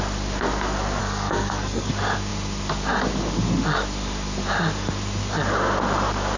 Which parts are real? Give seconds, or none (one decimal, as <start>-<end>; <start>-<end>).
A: 0.0-1.0; 1.9-6.4